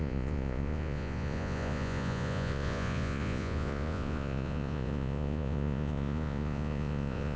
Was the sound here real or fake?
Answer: fake